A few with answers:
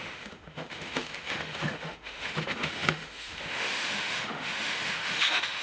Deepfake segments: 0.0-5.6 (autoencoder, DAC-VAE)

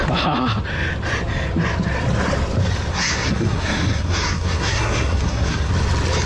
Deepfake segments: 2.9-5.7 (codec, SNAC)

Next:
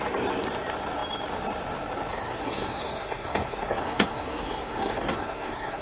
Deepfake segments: 2.1-5.8 (codec, SNAC)